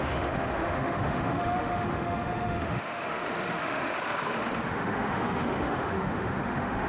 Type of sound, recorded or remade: remade